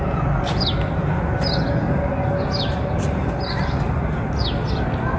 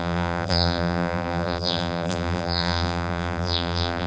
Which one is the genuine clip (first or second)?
first